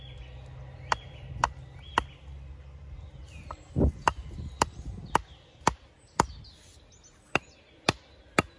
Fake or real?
real